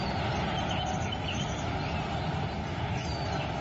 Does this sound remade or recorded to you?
recorded